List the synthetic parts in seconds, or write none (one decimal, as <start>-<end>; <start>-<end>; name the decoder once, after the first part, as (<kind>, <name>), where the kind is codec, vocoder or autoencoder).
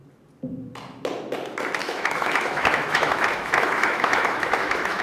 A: 1.8-5.0 (autoencoder, DAC-VAE)